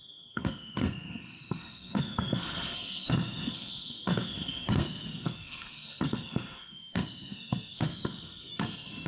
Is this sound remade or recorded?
remade